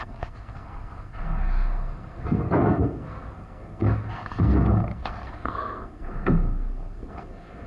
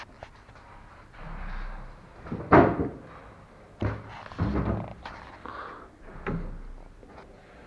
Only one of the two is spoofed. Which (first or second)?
first